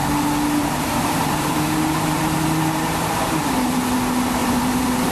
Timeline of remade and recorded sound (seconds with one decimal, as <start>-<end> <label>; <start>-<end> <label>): 0.0-0.6 recorded; 0.6-3.7 remade; 3.7-4.4 recorded; 4.4-5.1 remade